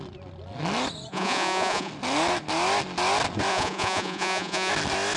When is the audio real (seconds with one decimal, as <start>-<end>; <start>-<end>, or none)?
0.0-1.1; 1.9-3.5; 4.7-5.2